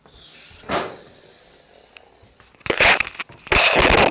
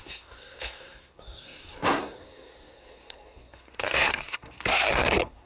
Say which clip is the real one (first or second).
first